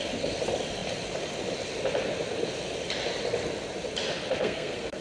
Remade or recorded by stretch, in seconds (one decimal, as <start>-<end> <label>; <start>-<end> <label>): 0.0-4.4 recorded; 4.4-5.0 remade